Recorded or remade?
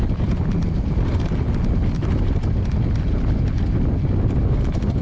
recorded